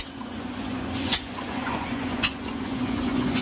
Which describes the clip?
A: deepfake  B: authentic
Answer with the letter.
A